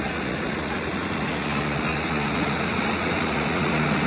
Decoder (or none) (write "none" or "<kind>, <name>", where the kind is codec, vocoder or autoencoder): vocoder, Vocos